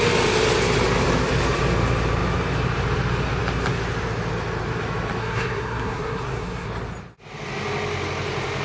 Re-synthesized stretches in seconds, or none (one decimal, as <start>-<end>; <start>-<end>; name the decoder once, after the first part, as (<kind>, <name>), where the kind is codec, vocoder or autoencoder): 5.2-6.7 (codec, SNAC)